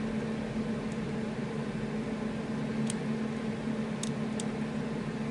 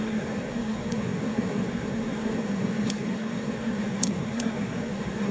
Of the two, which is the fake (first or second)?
second